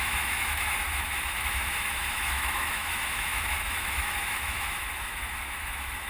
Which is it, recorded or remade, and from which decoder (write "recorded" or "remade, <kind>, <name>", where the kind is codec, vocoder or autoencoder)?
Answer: remade, autoencoder, DAC-VAE